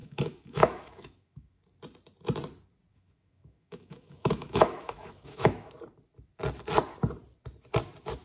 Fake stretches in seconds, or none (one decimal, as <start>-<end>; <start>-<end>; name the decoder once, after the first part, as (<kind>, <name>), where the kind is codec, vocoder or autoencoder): 0.0-1.6 (autoencoder, DAC-VAE); 2.9-5.7